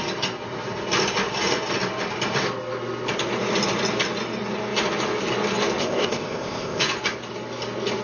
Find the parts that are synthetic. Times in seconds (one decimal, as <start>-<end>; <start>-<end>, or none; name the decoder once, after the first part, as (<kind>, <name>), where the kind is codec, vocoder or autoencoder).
5.8-6.8 (codec, ZipCodec)